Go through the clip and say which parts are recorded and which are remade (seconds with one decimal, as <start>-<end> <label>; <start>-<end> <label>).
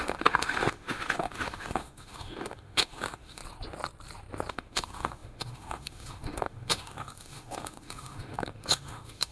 0.0-3.4 remade; 3.4-4.5 recorded; 4.5-9.3 remade